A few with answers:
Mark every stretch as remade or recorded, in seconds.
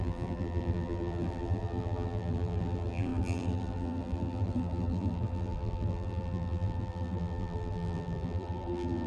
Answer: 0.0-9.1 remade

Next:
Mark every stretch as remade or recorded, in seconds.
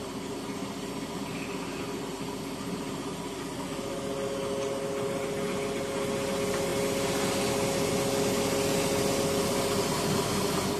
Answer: 0.0-10.8 recorded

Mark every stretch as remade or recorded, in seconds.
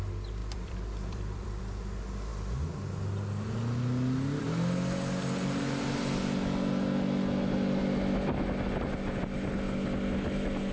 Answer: 0.0-0.4 recorded; 0.4-1.6 remade; 1.6-10.7 recorded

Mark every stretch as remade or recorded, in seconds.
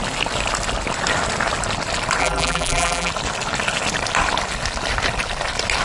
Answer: 0.0-2.2 recorded; 2.2-3.1 remade; 3.1-5.8 recorded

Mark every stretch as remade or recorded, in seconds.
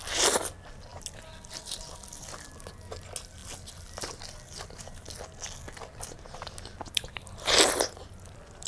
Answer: 0.0-3.4 recorded; 3.4-4.2 remade; 4.2-8.7 recorded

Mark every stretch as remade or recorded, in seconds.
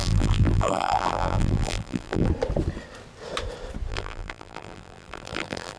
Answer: 0.0-2.3 remade; 2.3-3.9 recorded; 3.9-5.8 remade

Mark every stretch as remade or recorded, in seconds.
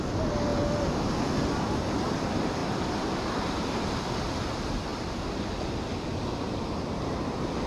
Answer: 0.0-7.7 recorded